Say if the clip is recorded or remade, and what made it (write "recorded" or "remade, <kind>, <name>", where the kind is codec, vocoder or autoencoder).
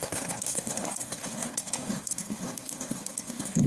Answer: remade, codec, SNAC